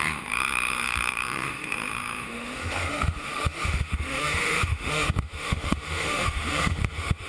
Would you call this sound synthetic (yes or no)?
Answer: yes